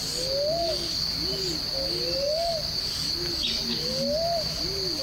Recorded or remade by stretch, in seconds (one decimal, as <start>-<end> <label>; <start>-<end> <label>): 0.0-5.0 recorded